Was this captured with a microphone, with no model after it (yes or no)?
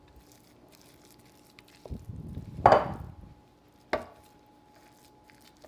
yes